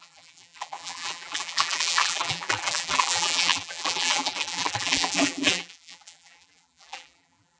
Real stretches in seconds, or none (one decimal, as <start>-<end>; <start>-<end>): none